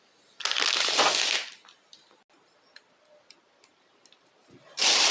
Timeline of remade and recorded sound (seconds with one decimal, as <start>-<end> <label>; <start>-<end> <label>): 0.0-3.7 recorded; 3.7-5.1 remade